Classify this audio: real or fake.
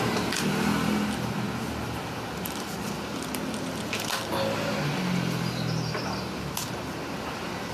real